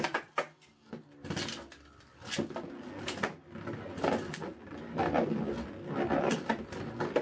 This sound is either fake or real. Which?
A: real